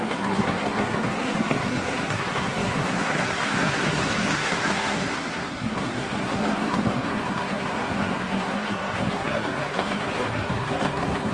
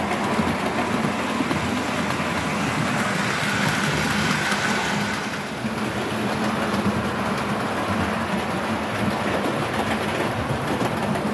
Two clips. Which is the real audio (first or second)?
second